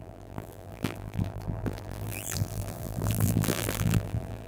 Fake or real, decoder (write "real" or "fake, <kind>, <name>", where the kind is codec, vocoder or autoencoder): fake, vocoder, BigVGAN v2